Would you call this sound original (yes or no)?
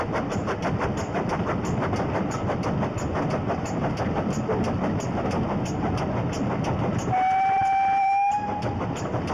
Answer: yes